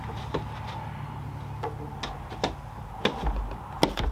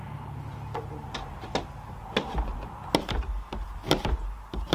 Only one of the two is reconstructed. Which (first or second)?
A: second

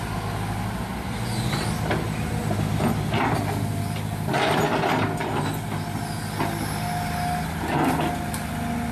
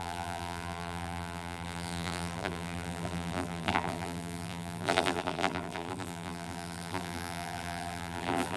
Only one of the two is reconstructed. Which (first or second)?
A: second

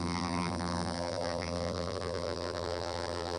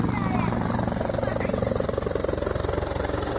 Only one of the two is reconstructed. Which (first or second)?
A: first